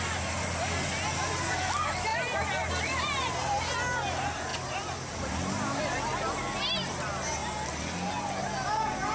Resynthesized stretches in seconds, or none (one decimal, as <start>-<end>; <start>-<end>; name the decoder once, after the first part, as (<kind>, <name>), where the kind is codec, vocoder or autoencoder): none